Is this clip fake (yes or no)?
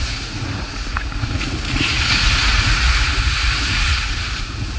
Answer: yes